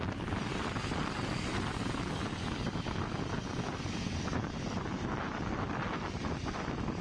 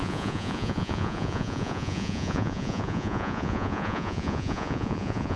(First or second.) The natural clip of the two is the first